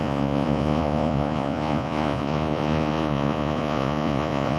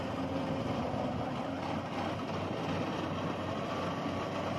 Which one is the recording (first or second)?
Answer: second